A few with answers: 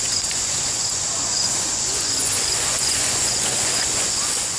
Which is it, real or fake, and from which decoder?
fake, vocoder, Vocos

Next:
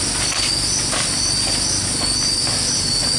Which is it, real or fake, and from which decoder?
real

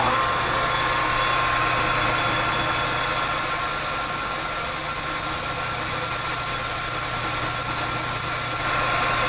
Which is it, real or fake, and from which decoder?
real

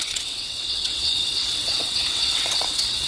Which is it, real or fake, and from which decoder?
fake, vocoder, WaveNeXt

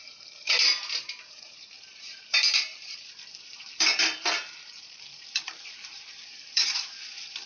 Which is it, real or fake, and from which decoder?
fake, vocoder, BigVGAN v2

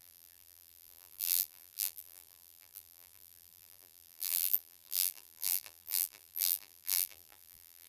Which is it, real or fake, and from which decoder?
fake, vocoder, BigVGAN v2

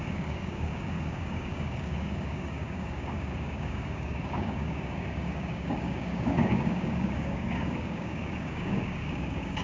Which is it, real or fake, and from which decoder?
fake, codec, DAC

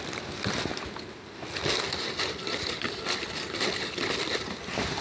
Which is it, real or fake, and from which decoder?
real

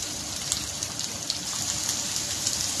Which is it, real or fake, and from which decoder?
real